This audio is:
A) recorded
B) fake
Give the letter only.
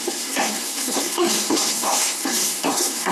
B